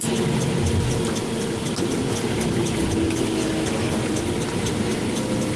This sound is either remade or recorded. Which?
recorded